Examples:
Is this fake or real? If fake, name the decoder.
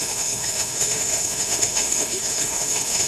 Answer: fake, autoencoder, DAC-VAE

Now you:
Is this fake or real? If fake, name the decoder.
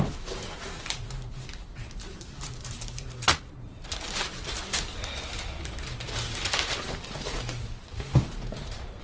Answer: fake, vocoder, BigVGAN v2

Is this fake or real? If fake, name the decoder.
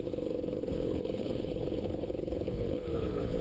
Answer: fake, codec, HILCodec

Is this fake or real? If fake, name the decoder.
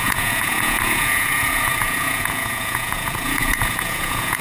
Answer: fake, vocoder, Vocos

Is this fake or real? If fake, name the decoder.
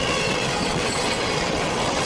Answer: fake, vocoder, WaveNeXt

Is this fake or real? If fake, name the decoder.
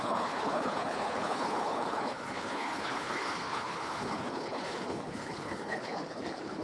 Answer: fake, codec, HILCodec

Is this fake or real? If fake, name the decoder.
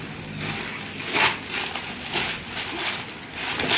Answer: real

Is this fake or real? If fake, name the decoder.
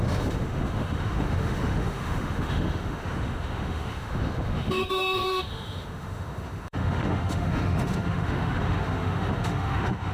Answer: fake, autoencoder, DAC-VAE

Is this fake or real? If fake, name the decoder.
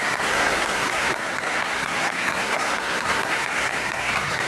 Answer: fake, codec, SNAC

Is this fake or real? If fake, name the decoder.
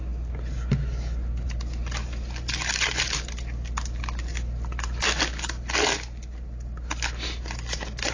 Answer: real